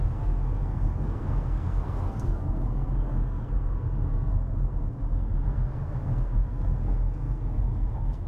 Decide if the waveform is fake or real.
fake